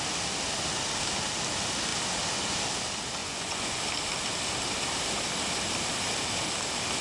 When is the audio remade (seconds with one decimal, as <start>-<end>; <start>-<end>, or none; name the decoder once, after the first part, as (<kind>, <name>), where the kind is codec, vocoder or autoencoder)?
3.2-3.8 (vocoder, Vocos)